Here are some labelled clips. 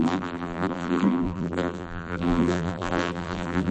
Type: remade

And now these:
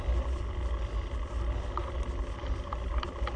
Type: recorded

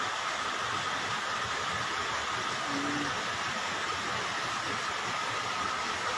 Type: recorded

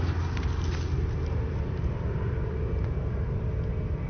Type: recorded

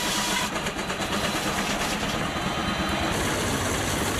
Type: recorded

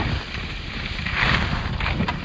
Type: recorded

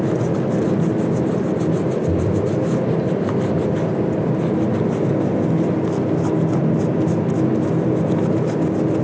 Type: recorded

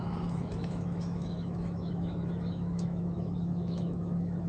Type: remade